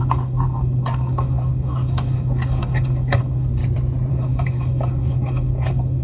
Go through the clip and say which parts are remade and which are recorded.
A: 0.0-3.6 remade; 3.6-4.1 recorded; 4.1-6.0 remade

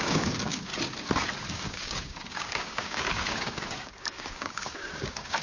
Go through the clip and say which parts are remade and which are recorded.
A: 0.0-0.7 remade; 0.7-1.5 recorded; 1.5-5.4 remade

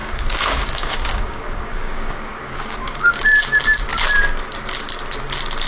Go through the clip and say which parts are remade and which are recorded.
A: 0.0-3.4 remade; 3.4-5.7 recorded

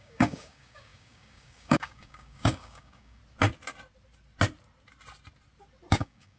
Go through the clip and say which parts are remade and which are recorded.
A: 0.0-3.2 remade; 3.2-5.9 recorded; 5.9-6.4 remade

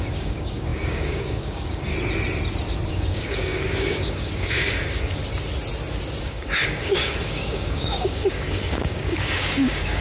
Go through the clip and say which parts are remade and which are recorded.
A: 0.0-1.9 remade; 1.9-2.9 recorded; 2.9-5.2 remade; 5.2-6.2 recorded; 6.2-10.0 remade

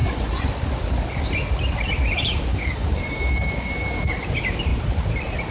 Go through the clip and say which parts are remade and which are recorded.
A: 0.0-2.5 recorded; 2.5-3.7 remade; 3.7-5.5 recorded

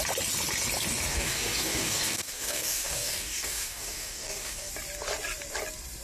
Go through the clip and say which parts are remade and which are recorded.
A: 0.0-1.1 recorded; 1.1-4.7 remade; 4.7-6.0 recorded